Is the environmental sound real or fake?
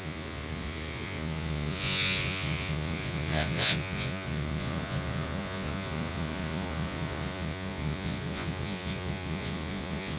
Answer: fake